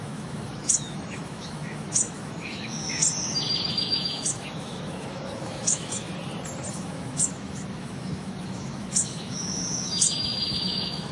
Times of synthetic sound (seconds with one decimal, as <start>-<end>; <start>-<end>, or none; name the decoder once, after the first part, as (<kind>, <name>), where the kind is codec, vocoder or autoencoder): 0.0-3.0 (autoencoder, DAC-VAE); 3.7-6.1; 6.7-11.1